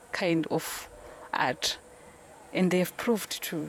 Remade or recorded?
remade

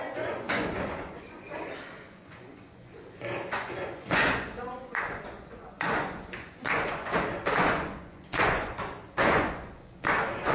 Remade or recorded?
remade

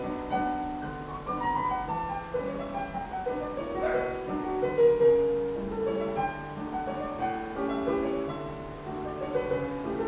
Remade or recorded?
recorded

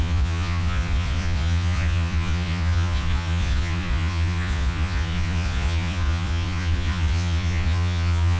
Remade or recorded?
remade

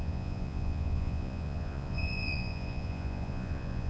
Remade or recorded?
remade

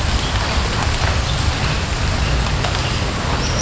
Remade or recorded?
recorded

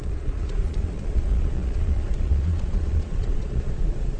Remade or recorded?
remade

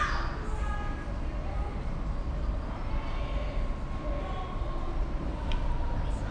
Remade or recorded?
recorded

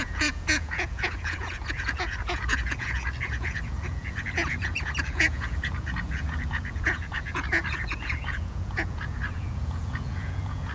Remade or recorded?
remade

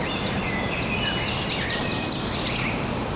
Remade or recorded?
recorded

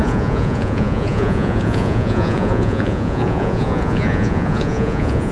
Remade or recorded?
remade